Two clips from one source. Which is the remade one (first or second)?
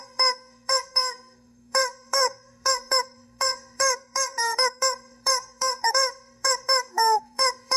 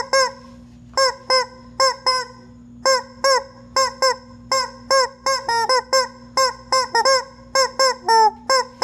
first